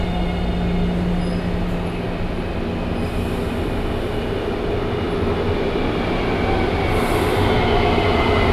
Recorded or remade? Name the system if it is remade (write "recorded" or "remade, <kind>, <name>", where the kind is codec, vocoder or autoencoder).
recorded